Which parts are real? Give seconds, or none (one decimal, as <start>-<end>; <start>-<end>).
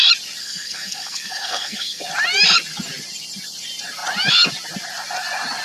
0.0-0.4; 2.0-5.6